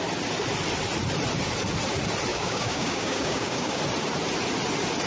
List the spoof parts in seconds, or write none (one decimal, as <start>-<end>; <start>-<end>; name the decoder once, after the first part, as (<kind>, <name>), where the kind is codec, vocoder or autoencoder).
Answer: 2.3-3.8 (codec, DAC)